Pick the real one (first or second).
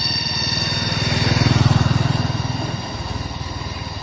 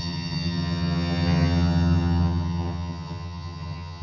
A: first